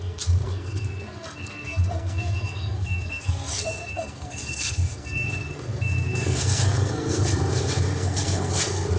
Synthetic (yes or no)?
yes